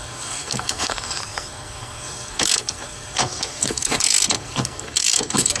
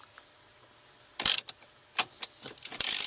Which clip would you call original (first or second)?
second